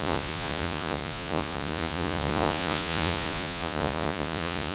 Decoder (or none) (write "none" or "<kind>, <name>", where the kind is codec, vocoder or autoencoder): vocoder, Vocos